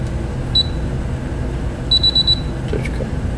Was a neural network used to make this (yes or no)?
no